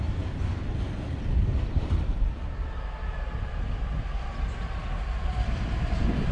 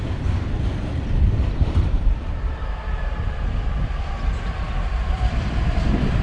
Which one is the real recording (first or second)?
first